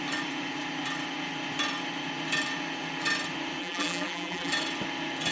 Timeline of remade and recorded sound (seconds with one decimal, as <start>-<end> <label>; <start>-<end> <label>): 0.0-3.6 recorded; 3.6-4.5 remade; 4.5-5.3 recorded